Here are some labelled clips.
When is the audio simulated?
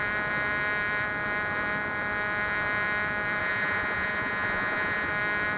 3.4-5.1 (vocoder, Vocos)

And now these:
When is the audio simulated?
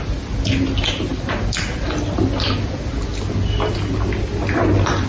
none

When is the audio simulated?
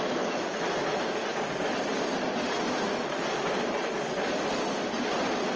none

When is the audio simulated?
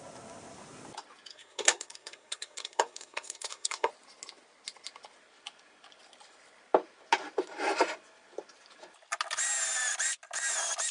1.3-3.9 (codec, SNAC)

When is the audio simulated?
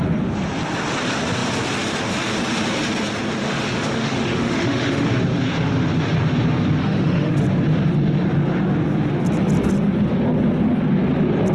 3.4-5.1 (autoencoder, DAC-VAE); 6.8-7.4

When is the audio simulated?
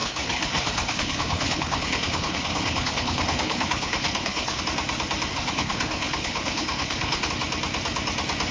0.0-4.6 (codec, HILCodec); 5.3-7.3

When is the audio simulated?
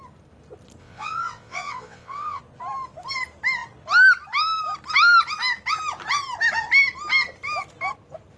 0.8-2.4 (vocoder, WaveNeXt)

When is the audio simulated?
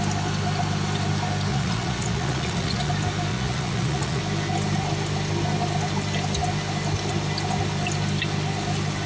1.5-2.9 (vocoder, Vocos); 3.3-4.2